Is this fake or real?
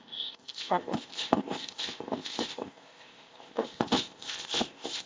fake